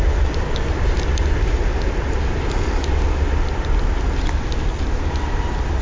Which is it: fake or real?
real